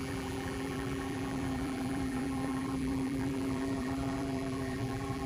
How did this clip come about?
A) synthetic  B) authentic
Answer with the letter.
A